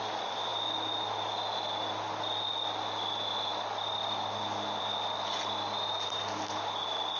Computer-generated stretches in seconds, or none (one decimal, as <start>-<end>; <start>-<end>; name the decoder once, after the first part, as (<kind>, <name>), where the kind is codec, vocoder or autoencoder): none